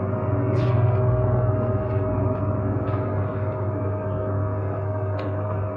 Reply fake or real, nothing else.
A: fake